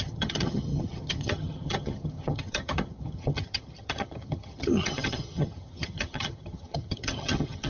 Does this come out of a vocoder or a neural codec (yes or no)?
yes